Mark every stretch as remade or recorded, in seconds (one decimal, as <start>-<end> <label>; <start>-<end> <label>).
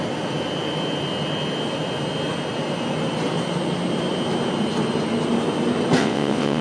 0.0-6.0 recorded; 6.0-6.6 remade